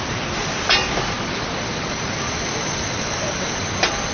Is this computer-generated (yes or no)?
no